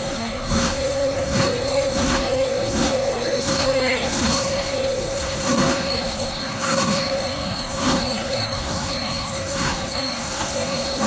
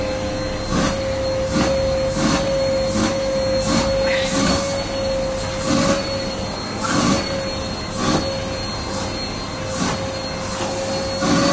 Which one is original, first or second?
second